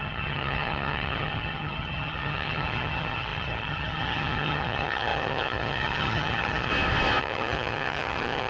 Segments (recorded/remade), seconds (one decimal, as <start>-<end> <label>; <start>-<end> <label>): 0.0-6.7 remade; 6.7-7.2 recorded; 7.2-8.5 remade